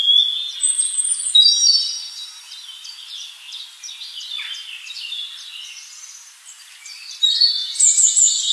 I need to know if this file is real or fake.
real